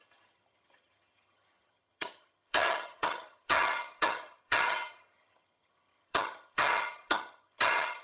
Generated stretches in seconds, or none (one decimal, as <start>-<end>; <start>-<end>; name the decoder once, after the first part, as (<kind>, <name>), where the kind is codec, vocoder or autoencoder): 0.0-8.0 (vocoder, HiFi-GAN)